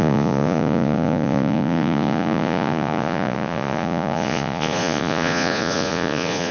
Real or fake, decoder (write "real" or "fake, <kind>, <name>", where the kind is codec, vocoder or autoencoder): fake, vocoder, Vocos